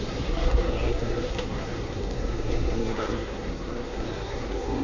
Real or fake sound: fake